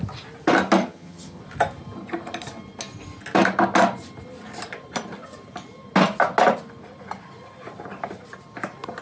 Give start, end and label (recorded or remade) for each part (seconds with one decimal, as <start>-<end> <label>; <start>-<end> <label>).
0.0-0.8 recorded; 0.8-1.4 remade; 1.4-9.0 recorded